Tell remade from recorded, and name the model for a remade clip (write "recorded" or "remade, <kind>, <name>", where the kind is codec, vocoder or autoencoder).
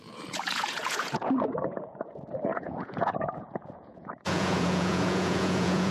remade, vocoder, Vocos